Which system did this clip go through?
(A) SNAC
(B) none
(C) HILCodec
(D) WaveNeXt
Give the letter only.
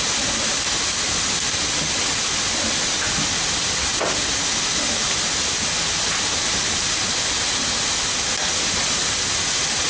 B